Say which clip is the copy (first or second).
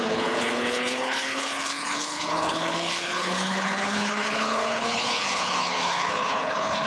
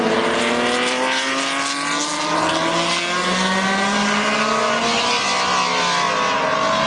first